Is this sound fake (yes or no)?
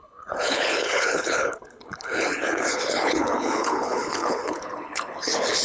yes